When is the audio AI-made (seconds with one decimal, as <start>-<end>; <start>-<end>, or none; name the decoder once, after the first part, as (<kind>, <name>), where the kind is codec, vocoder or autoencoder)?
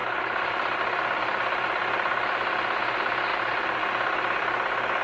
0.0-0.8 (vocoder, BigVGAN v2); 3.3-3.8